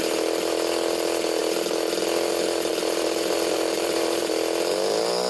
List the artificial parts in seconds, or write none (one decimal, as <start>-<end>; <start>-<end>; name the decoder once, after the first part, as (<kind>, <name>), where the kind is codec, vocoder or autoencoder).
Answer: 2.7-4.3 (vocoder, BigVGAN v2)